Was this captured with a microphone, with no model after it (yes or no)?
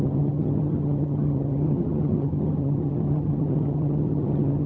no